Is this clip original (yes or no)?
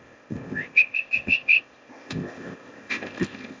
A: no